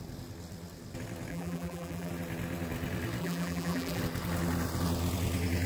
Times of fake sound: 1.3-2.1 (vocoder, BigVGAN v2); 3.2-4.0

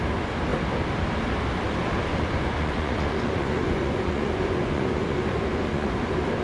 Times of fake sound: 2.1-5.9 (vocoder, Vocos)

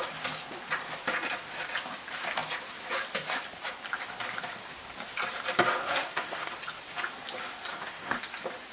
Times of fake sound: 5.8-6.5 (codec, SNAC); 7.7-8.2

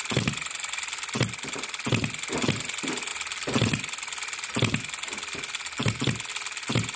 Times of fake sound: none

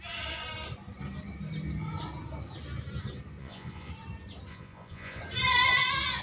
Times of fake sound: 3.4-3.9 (vocoder, Vocos); 4.5-5.2